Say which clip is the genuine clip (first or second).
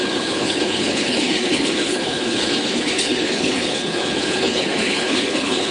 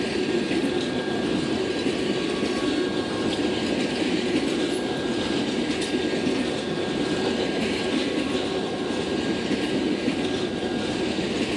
second